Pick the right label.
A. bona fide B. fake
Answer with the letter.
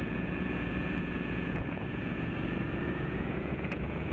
B